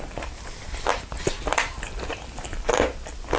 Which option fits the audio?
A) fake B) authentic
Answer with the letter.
B